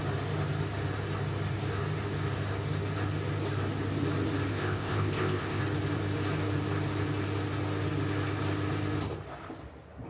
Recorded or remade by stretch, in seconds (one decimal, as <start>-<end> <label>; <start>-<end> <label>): 0.0-4.5 recorded; 4.5-5.6 remade; 5.6-10.1 recorded